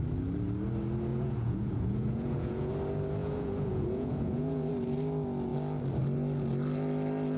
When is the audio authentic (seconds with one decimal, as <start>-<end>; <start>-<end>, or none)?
0.0-1.1; 2.7-3.2; 4.7-7.4